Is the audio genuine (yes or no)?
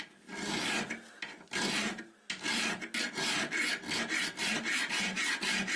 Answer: yes